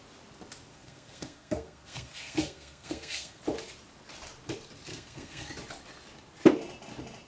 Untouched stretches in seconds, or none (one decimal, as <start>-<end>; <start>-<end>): 0.0-0.7; 3.4-4.9; 5.5-7.3